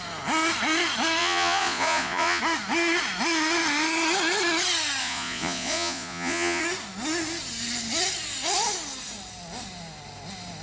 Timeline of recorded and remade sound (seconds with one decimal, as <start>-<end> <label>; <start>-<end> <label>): 0.0-1.2 recorded; 1.2-2.4 remade; 2.4-5.0 recorded; 5.0-6.6 remade; 6.6-10.6 recorded